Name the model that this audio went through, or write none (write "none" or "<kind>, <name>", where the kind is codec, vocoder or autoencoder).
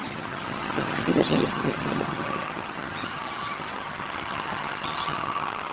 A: vocoder, HiFi-GAN